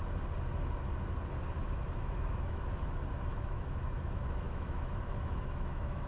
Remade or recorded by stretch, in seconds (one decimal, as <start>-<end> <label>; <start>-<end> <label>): 0.0-1.6 recorded; 1.6-2.8 remade; 2.8-3.3 recorded; 3.3-6.1 remade